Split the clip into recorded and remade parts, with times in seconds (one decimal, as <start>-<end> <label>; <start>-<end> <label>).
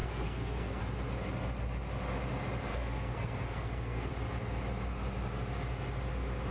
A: 0.0-0.8 remade; 0.8-2.7 recorded; 2.7-4.1 remade; 4.1-6.5 recorded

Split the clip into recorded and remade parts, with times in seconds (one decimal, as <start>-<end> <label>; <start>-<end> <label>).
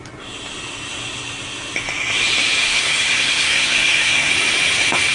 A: 0.0-2.6 recorded; 2.6-4.3 remade; 4.3-5.1 recorded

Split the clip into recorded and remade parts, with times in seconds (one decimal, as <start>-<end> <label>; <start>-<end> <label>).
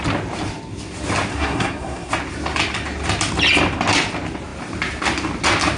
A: 0.0-1.3 recorded; 1.3-2.1 remade; 2.1-5.8 recorded